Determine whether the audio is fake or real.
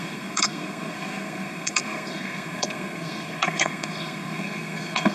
fake